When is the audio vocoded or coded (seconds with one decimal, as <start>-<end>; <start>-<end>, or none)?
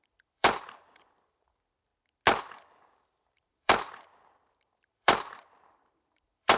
0.0-1.9; 3.0-6.6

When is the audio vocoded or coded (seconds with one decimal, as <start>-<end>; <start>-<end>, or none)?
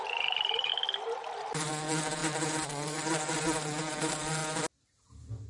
0.0-0.7; 1.5-4.4; 5.1-5.5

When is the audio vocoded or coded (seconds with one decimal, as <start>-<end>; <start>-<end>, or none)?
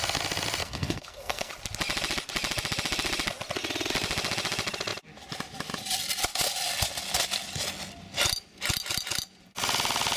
0.6-1.5